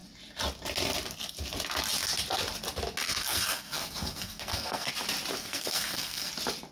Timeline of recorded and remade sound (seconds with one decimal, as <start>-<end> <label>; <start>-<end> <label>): 0.0-3.0 recorded; 3.0-4.9 remade; 4.9-5.4 recorded; 5.4-6.3 remade; 6.3-6.7 recorded